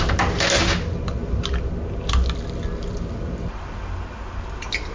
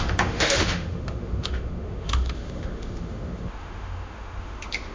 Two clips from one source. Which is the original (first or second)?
first